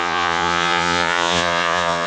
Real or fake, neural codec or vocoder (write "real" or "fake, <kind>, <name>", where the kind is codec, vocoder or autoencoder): fake, vocoder, Vocos